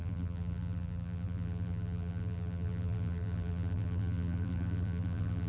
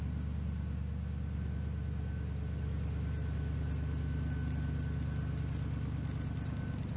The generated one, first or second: first